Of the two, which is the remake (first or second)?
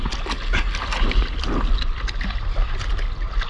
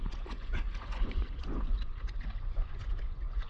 second